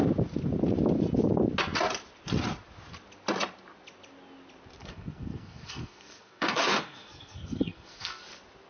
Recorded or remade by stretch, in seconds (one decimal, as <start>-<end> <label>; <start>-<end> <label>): 0.0-4.8 recorded; 4.8-8.2 remade; 8.2-8.7 recorded

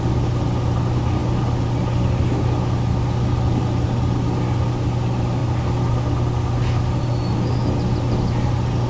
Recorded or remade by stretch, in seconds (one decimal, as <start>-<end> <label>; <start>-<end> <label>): 0.0-8.9 recorded

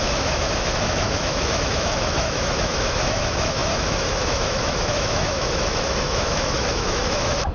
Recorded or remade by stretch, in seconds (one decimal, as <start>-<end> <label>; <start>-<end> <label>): 0.0-7.5 remade

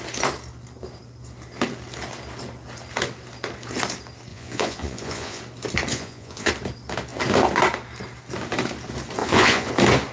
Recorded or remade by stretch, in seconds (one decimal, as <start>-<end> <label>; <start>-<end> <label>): 0.0-4.3 recorded; 4.3-5.4 remade; 5.4-5.9 recorded; 5.9-6.5 remade; 6.5-9.2 recorded; 9.2-9.7 remade; 9.7-10.1 recorded

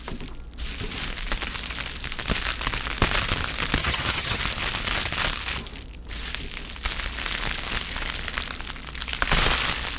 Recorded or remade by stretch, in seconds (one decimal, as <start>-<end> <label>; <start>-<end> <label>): 0.0-3.8 recorded; 3.8-4.4 remade; 4.4-10.0 recorded